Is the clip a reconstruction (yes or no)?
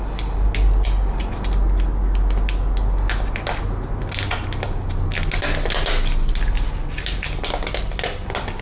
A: no